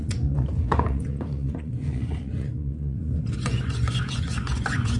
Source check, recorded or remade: remade